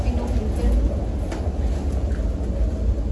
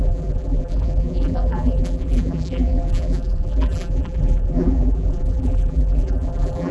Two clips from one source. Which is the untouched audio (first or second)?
first